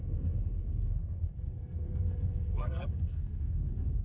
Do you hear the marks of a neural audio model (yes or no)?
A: yes